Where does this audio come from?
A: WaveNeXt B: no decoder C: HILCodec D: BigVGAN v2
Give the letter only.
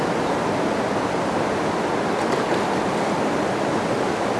B